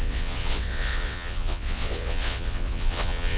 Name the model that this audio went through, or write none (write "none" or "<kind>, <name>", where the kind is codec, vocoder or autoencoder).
vocoder, WaveNeXt